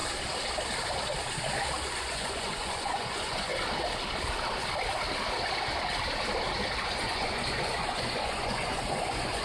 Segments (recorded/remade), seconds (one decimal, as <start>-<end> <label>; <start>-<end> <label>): 0.0-1.9 recorded; 1.9-3.5 remade; 3.5-6.8 recorded; 6.8-9.4 remade